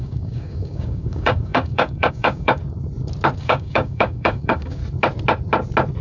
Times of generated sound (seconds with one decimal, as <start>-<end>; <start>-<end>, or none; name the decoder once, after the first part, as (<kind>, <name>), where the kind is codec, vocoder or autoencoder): 0.0-2.6 (codec, DAC); 3.4-4.8